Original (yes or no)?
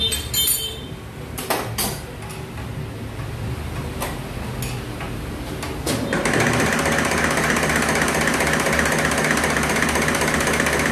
yes